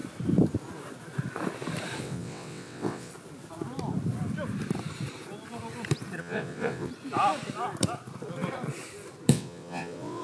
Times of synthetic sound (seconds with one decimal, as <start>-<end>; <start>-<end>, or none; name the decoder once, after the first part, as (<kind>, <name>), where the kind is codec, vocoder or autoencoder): 2.0-3.1 (vocoder, WaveNeXt); 6.2-6.9; 9.3-10.2